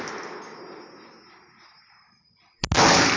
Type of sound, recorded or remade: recorded